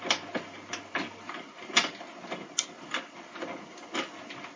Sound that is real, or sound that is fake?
real